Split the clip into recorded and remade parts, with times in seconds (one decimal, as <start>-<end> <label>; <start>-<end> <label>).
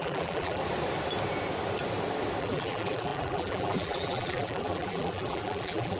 0.0-0.6 remade; 0.6-2.4 recorded; 2.4-6.0 remade